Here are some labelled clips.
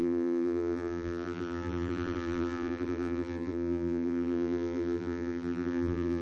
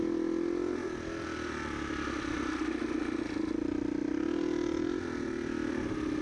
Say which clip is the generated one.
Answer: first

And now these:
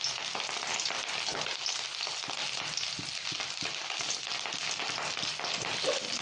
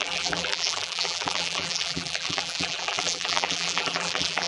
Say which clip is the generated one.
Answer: second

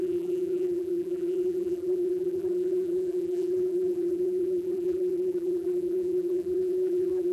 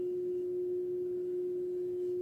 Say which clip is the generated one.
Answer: first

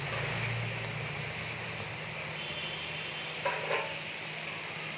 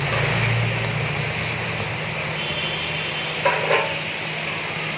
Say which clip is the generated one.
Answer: first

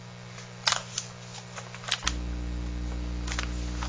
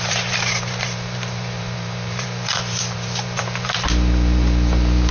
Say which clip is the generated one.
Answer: second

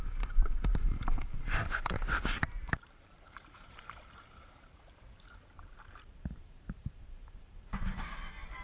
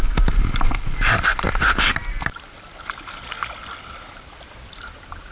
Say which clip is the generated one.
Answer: first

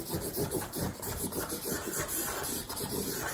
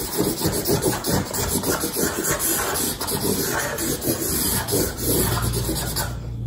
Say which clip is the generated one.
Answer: first